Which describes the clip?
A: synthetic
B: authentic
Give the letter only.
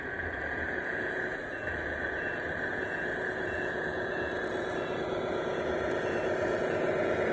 A